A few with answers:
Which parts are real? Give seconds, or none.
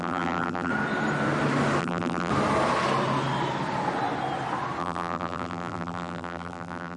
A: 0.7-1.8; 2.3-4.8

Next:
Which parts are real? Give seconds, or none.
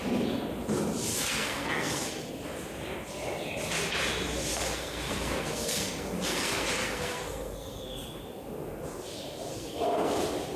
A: 0.0-1.1; 2.3-4.5; 8.2-9.5; 10.2-10.6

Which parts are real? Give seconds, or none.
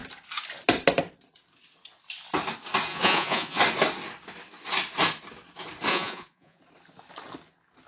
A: 0.0-2.9; 3.6-5.9; 6.6-7.9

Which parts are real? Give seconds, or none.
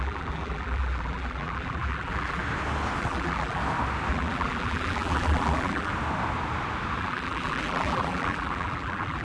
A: 2.4-3.0; 3.6-4.1; 5.9-7.0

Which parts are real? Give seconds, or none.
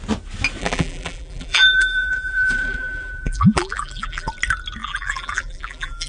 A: 0.0-0.6; 4.3-4.8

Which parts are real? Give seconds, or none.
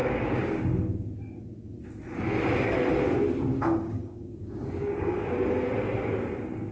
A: 0.6-3.5; 5.4-6.7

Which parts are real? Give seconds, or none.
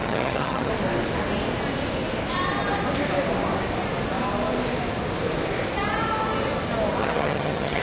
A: 0.7-7.0